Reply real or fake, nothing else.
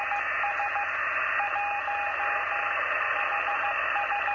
real